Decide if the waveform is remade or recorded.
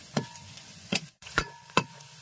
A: remade